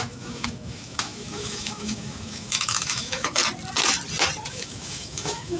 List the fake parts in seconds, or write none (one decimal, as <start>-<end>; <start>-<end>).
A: 0.0-3.4; 4.5-5.6